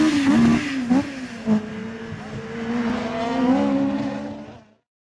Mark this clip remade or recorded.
recorded